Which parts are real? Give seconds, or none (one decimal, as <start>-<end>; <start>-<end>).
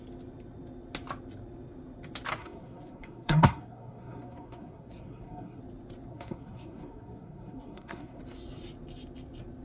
0.0-2.4; 5.6-6.1; 8.2-9.6